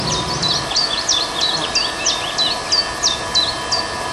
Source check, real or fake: real